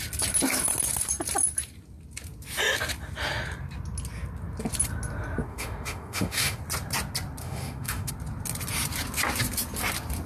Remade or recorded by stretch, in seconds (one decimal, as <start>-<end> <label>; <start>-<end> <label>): 0.0-5.5 recorded; 5.5-6.6 remade; 6.6-7.4 recorded; 7.4-8.1 remade; 8.1-10.3 recorded